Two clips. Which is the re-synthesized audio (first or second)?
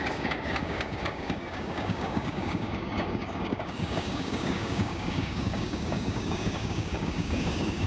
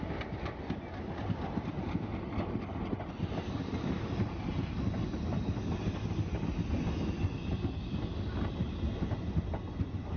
first